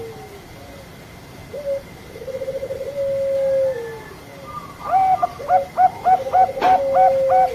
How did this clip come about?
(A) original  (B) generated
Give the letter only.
A